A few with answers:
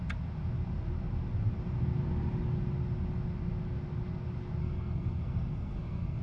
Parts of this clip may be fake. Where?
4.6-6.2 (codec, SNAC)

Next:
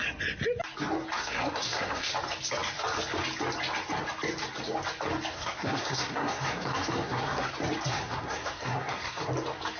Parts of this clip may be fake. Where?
1.2-2.1 (codec, SNAC); 5.3-7.5; 7.9-9.2

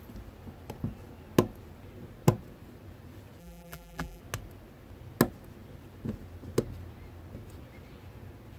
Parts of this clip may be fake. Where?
3.4-4.2 (vocoder, BigVGAN v2)

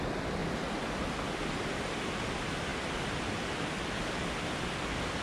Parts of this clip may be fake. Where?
0.4-2.0 (vocoder, BigVGAN v2)

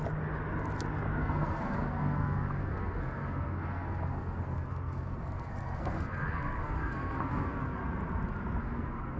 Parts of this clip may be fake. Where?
1.2-7.8 (codec, SNAC); 8.6-9.2

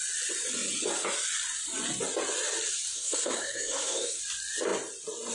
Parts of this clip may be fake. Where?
2.9-4.2 (codec, SNAC)

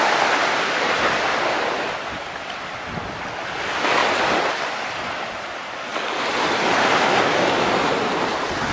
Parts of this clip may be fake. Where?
0.4-2.8 (vocoder, BigVGAN v2); 4.0-5.4; 5.9-6.7